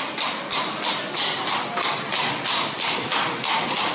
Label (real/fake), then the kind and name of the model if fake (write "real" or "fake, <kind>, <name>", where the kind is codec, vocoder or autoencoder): real